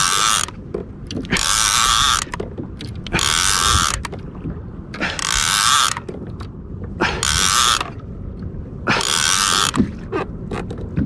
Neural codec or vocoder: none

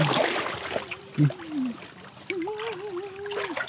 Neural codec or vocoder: none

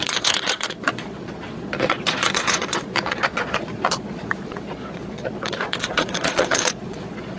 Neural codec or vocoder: vocoder, Vocos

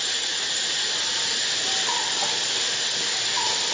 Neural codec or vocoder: none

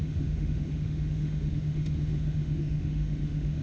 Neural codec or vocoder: autoencoder, DAC-VAE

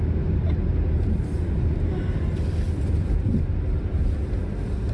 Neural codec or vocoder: none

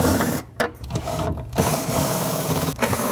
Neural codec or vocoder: codec, DAC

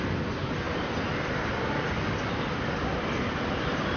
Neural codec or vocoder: none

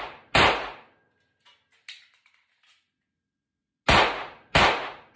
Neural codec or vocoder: none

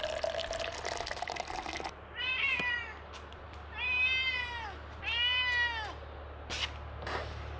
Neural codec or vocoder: none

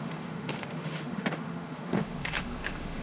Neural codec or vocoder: autoencoder, DAC-VAE